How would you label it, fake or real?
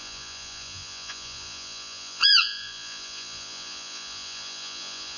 fake